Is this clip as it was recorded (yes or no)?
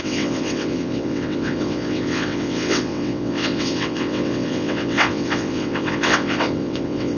no